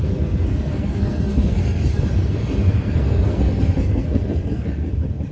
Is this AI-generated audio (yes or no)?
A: yes